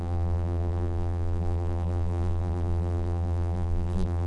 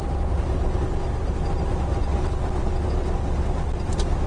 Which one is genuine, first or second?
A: second